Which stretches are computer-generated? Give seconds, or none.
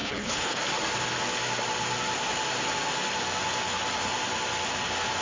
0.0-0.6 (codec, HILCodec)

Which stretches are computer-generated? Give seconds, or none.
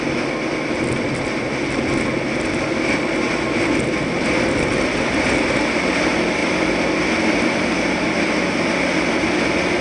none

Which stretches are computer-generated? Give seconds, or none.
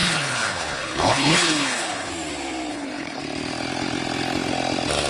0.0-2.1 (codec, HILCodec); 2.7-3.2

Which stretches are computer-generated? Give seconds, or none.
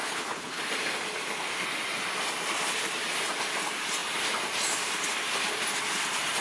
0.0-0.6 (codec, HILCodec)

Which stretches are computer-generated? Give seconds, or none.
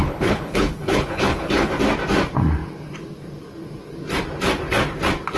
0.0-1.7 (codec, HILCodec)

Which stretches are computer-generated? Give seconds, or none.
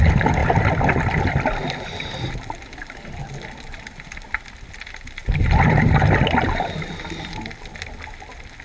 none